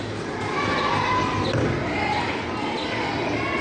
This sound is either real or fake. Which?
real